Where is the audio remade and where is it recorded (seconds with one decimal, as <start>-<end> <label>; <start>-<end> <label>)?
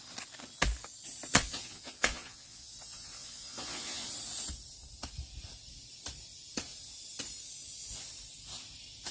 0.0-1.3 recorded; 1.3-4.1 remade; 4.1-9.1 recorded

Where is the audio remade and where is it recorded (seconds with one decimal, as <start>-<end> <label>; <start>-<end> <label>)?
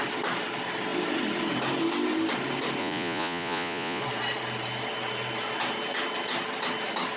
0.0-2.8 recorded; 2.8-4.0 remade; 4.0-7.2 recorded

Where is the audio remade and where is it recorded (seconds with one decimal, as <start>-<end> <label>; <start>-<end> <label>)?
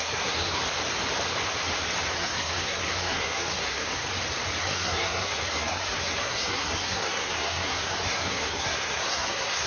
0.0-0.6 remade; 0.6-2.1 recorded; 2.1-4.0 remade; 4.0-4.6 recorded; 4.6-9.7 remade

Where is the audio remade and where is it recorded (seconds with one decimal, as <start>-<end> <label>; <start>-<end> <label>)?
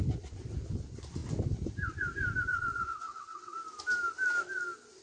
0.0-2.5 recorded; 2.5-3.5 remade; 3.5-5.0 recorded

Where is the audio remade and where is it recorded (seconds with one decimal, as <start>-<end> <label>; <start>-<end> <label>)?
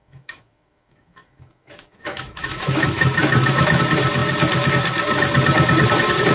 0.0-3.8 remade; 3.8-6.3 recorded